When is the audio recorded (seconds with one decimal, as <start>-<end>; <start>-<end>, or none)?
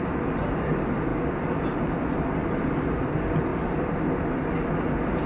0.0-5.3